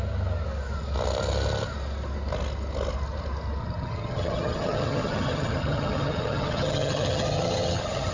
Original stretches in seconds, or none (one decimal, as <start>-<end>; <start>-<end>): 0.0-3.6